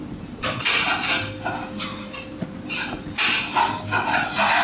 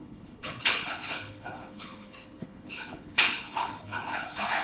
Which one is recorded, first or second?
first